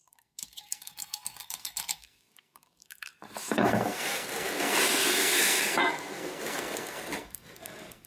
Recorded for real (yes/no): no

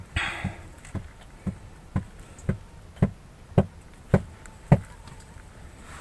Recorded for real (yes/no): yes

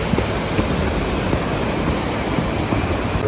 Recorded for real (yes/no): yes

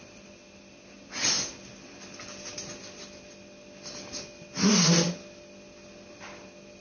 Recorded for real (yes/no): yes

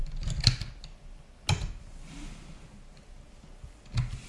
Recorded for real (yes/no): yes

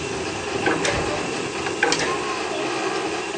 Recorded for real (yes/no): yes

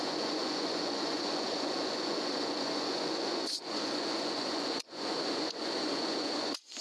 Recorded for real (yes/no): no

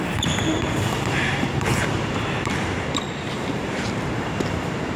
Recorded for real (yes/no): no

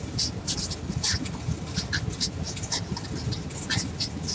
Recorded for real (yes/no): yes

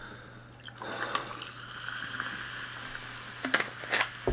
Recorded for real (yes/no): yes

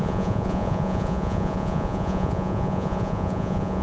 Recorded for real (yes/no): no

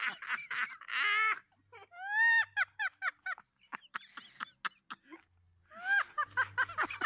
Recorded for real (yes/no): yes